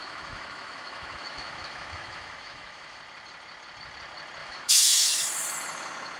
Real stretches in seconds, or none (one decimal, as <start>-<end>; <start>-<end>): 3.0-4.4; 5.2-6.2